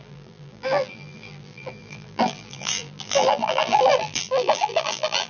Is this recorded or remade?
remade